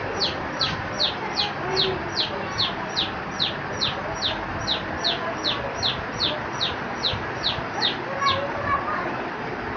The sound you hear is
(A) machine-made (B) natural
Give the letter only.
B